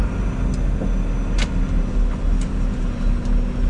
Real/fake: real